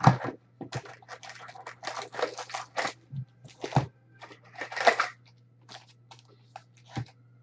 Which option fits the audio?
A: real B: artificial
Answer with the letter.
A